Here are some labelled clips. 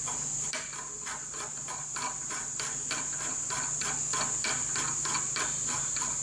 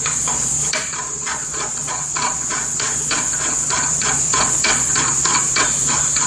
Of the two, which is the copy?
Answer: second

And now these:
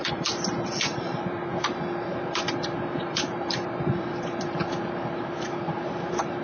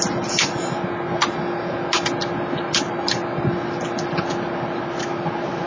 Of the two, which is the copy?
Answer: first